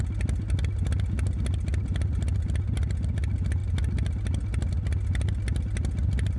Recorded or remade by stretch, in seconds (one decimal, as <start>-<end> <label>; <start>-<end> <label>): 0.0-6.4 recorded